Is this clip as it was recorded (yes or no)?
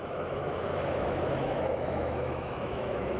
no